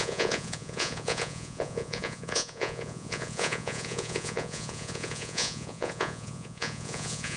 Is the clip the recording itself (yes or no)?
no